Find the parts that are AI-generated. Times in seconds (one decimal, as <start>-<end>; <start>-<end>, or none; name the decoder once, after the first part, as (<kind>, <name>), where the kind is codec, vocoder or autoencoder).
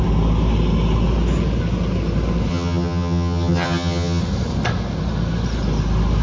2.5-4.2 (vocoder, HiFi-GAN)